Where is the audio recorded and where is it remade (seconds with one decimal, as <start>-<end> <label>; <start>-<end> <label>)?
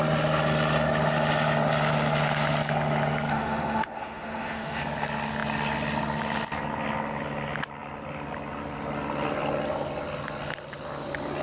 0.0-3.3 recorded; 3.3-4.8 remade; 4.8-11.4 recorded